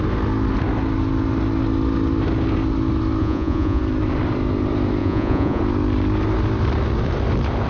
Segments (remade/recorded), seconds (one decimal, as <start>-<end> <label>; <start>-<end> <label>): 0.0-3.2 recorded; 3.2-3.8 remade; 3.8-5.0 recorded; 5.0-5.6 remade; 5.6-7.7 recorded